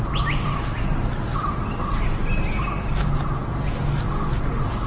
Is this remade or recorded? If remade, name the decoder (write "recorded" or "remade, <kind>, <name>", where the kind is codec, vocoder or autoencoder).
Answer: recorded